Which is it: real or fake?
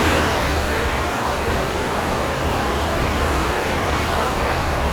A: fake